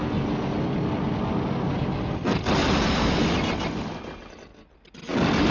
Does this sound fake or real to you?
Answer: real